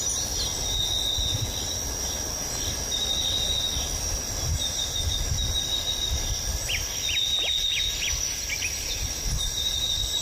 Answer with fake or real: real